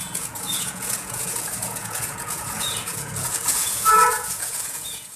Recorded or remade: remade